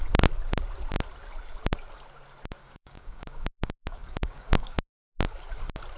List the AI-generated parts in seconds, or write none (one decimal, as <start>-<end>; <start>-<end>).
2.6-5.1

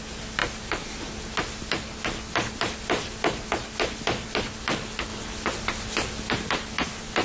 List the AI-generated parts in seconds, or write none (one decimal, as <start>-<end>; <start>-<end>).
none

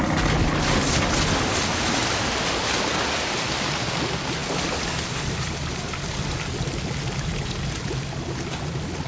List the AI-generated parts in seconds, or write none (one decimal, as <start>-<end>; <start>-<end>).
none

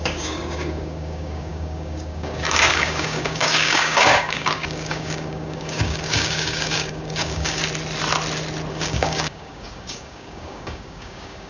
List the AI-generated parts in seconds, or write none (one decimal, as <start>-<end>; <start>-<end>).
0.0-7.6; 8.7-11.5

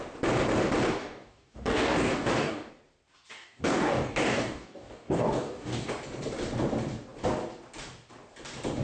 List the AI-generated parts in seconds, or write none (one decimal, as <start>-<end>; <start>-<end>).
1.0-2.7; 3.3-5.9